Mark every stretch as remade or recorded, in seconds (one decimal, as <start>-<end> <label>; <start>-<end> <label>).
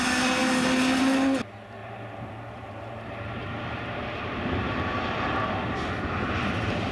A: 0.0-1.8 recorded; 1.8-5.9 remade; 5.9-6.9 recorded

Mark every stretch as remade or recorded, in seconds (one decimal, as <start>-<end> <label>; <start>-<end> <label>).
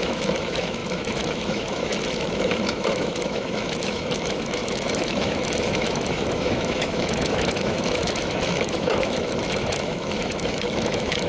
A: 0.0-11.3 remade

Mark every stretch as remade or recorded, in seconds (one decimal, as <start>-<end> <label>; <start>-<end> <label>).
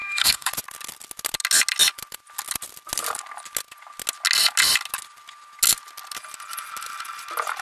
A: 0.0-0.5 remade; 0.5-7.6 recorded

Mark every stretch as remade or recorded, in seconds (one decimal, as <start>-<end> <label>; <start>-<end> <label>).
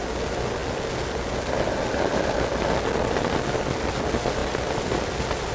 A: 0.0-5.5 recorded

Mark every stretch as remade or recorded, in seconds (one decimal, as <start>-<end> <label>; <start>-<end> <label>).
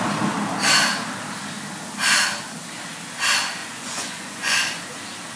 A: 0.0-3.6 recorded; 3.6-4.8 remade; 4.8-5.4 recorded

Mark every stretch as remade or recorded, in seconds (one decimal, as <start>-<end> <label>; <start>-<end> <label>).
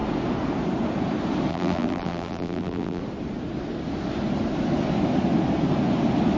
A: 0.0-1.5 recorded; 1.5-3.0 remade; 3.0-6.4 recorded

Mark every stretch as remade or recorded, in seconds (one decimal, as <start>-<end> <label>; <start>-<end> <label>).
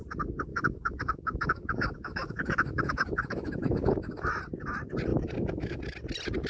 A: 0.0-0.5 recorded; 0.5-4.4 remade; 4.4-5.1 recorded; 5.1-5.8 remade; 5.8-6.5 recorded